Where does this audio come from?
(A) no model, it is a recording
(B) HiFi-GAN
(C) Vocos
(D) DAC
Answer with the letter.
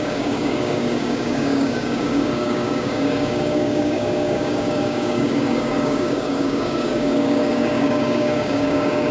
D